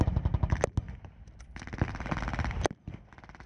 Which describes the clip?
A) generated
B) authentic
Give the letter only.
B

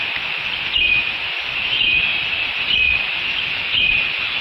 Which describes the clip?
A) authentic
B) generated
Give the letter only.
A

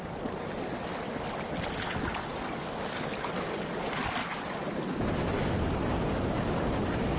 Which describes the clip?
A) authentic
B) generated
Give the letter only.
A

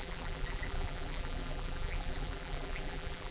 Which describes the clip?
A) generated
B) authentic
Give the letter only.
A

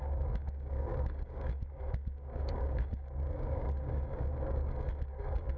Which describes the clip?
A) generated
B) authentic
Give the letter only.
A